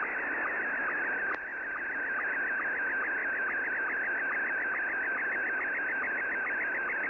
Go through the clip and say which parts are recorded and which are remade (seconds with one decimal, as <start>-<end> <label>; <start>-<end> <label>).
0.0-7.1 recorded